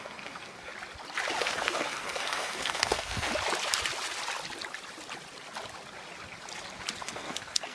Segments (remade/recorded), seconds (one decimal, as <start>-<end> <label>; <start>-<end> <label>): 0.0-0.7 remade; 0.7-1.4 recorded; 1.4-3.3 remade; 3.3-7.0 recorded; 7.0-7.7 remade